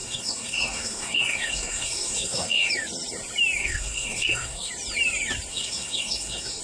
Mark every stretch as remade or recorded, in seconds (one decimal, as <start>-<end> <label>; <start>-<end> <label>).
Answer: 0.0-2.7 remade; 2.7-3.6 recorded; 3.6-4.7 remade; 4.7-5.5 recorded; 5.5-6.6 remade

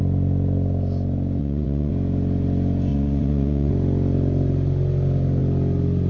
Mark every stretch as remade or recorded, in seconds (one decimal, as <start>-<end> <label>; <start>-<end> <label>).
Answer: 0.0-1.4 recorded; 1.4-1.9 remade; 1.9-2.9 recorded; 2.9-3.7 remade; 3.7-6.1 recorded

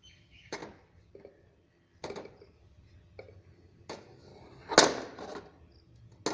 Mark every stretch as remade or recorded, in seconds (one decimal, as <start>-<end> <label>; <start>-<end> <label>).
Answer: 0.0-0.6 remade; 0.6-3.9 recorded; 3.9-4.3 remade; 4.3-6.3 recorded